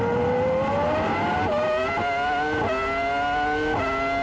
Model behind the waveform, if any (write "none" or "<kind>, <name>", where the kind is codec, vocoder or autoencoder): none